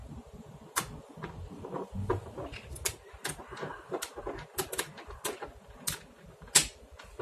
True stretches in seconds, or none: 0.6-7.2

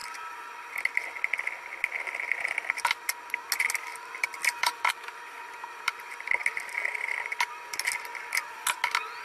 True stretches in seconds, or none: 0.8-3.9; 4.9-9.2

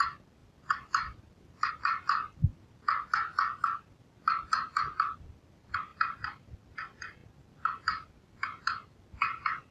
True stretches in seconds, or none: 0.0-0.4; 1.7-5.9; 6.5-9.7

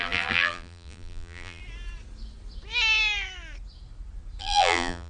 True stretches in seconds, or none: 1.6-4.4